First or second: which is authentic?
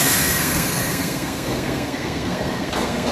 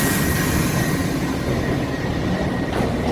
second